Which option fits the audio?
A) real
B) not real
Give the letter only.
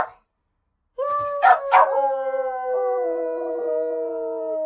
A